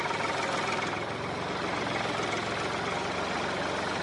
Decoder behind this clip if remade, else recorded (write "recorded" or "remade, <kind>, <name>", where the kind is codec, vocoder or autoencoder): recorded